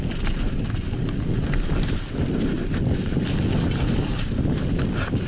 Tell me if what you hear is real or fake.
real